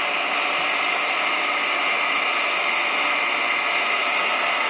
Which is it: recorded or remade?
recorded